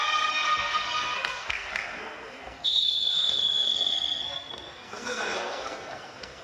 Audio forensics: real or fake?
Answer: fake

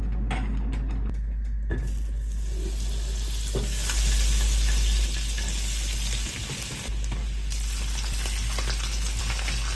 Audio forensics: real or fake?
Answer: real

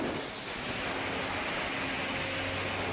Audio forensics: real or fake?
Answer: real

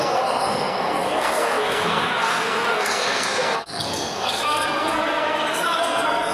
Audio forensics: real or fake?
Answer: fake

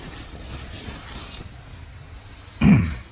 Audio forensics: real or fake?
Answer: real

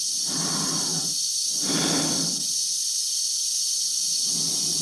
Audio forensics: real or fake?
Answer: real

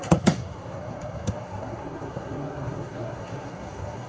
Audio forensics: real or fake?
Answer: fake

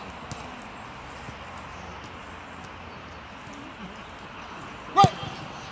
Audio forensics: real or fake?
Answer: real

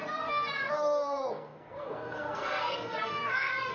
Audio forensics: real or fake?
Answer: fake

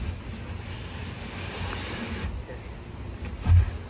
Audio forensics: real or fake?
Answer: real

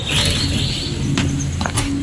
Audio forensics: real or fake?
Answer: real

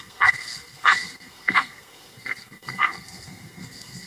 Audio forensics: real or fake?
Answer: fake